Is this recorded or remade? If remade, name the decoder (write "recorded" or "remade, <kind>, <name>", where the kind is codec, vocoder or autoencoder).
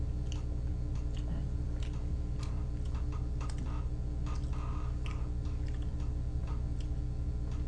recorded